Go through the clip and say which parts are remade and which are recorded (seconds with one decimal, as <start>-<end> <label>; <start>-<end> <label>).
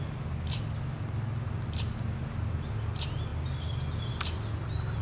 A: 0.0-5.0 recorded